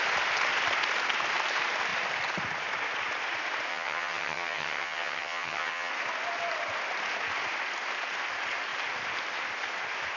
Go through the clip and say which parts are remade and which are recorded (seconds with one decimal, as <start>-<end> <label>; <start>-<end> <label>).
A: 0.0-3.7 recorded; 3.7-5.9 remade; 5.9-10.2 recorded